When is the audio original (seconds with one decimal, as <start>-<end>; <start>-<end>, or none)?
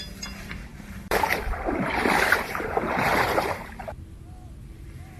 0.0-0.7; 3.8-5.2